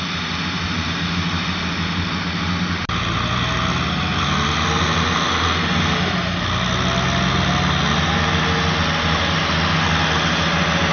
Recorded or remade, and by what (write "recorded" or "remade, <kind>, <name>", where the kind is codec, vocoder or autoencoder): recorded